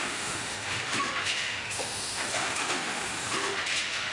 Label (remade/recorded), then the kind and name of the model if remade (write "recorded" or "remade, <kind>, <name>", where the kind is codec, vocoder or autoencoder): remade, autoencoder, DAC-VAE